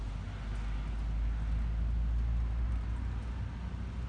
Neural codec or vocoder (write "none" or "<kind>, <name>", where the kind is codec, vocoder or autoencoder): none